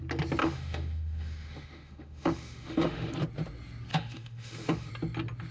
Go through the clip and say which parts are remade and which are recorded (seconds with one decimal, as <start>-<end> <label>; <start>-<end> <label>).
0.0-0.4 recorded; 0.4-3.1 remade; 3.1-3.9 recorded; 3.9-4.9 remade; 4.9-5.5 recorded

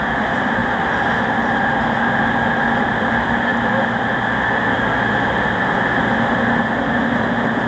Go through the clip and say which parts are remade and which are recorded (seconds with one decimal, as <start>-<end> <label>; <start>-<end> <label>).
0.0-0.6 remade; 0.6-2.2 recorded; 2.2-3.5 remade; 3.5-6.4 recorded; 6.4-7.7 remade

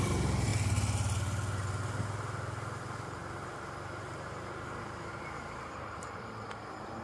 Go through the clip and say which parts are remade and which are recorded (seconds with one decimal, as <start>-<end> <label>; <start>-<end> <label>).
0.0-0.5 remade; 0.5-4.0 recorded; 4.0-7.0 remade

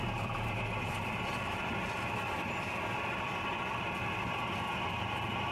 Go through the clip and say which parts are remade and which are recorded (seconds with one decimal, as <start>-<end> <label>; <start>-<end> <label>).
0.0-5.5 remade

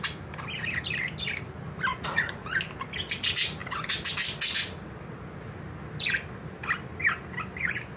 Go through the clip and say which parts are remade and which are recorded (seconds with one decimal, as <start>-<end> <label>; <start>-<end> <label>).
0.0-1.9 recorded; 1.9-2.6 remade; 2.6-8.0 recorded